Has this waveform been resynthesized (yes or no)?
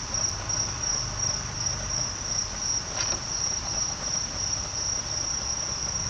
no